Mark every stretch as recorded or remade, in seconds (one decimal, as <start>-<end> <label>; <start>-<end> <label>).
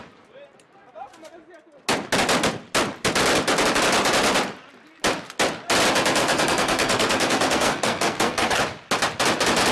0.0-6.2 recorded; 6.2-8.6 remade; 8.6-9.7 recorded